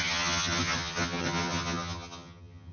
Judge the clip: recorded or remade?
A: remade